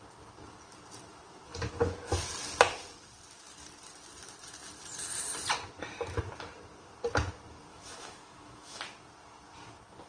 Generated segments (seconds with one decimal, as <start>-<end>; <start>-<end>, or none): 7.7-8.8